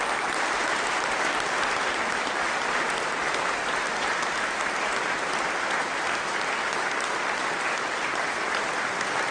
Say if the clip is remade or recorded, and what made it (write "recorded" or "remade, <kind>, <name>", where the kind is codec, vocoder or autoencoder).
recorded